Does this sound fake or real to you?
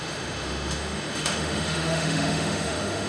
fake